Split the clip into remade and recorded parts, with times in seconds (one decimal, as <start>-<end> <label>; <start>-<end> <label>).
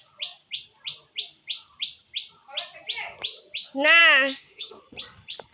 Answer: 0.0-4.0 recorded; 4.0-4.8 remade; 4.8-5.5 recorded